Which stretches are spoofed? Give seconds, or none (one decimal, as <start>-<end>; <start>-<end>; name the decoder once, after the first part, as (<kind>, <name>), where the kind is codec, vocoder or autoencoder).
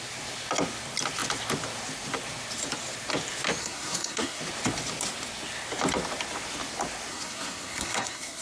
3.6-4.4 (codec, SNAC); 7.1-8.4